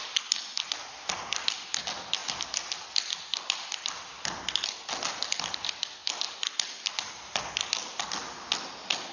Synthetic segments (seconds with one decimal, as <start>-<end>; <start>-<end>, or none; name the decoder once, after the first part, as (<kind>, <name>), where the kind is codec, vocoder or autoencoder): none